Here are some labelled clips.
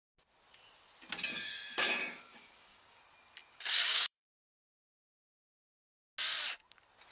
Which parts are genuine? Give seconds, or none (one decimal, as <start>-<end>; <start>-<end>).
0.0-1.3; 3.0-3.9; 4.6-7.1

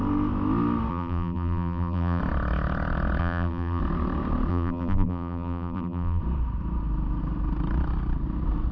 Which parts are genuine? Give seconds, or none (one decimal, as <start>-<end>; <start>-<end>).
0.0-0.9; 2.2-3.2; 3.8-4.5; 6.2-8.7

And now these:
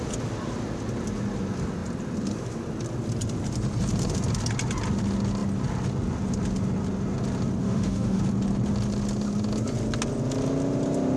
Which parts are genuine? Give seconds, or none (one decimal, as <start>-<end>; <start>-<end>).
0.0-7.6; 8.2-11.2

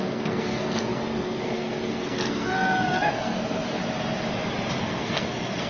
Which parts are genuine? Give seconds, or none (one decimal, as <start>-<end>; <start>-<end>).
3.8-4.8